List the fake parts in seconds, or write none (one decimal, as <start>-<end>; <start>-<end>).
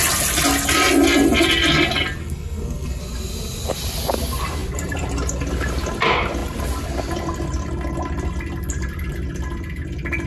2.2-3.0